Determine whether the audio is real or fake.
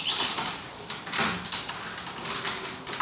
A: real